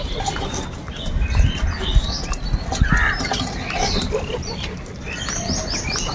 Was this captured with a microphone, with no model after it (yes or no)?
yes